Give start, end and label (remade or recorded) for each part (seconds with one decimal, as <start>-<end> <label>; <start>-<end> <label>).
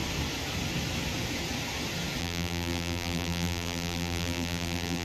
0.0-2.2 recorded; 2.2-5.0 remade